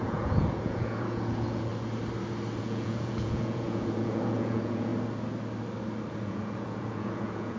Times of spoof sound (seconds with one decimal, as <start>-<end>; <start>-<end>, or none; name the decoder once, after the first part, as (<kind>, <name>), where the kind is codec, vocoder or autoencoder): 0.0-1.7 (vocoder, Vocos); 2.6-4.9; 6.1-7.6